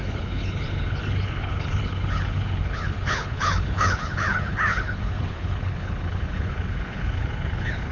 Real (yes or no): no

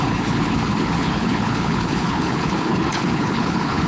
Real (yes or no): no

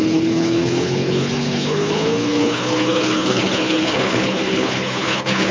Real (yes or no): no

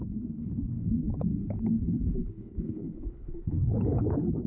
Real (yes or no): no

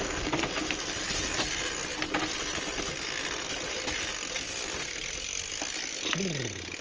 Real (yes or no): yes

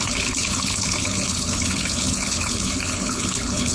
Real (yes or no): no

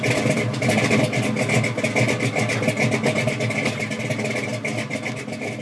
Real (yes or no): yes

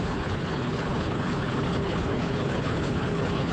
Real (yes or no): no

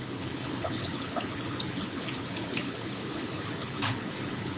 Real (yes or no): no